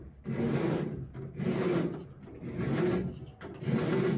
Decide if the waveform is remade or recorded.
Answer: recorded